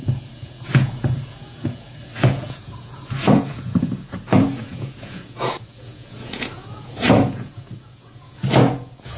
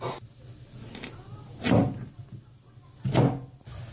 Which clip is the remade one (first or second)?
first